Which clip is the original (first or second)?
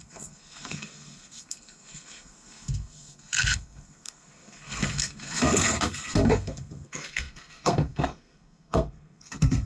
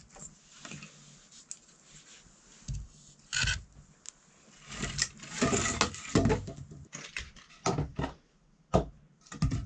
second